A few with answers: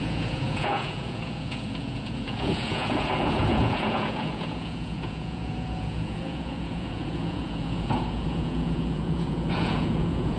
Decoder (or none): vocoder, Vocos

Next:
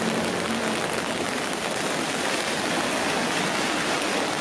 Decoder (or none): none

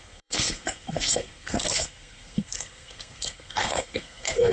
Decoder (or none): codec, SNAC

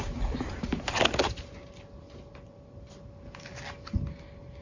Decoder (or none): none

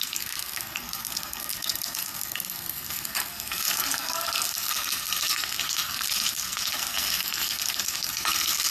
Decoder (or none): codec, SNAC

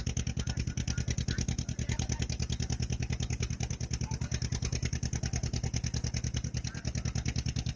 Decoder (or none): none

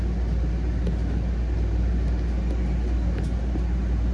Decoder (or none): none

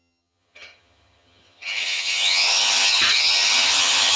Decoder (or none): vocoder, HiFi-GAN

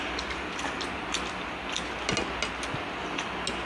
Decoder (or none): none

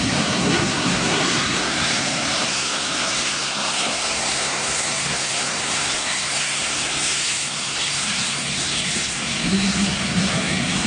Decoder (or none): codec, SNAC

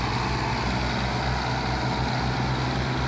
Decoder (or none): none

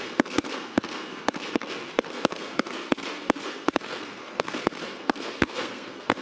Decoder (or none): codec, SNAC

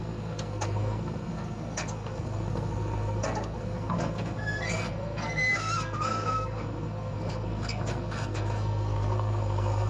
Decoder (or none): codec, SNAC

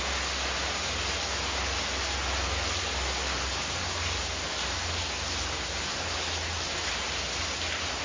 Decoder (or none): none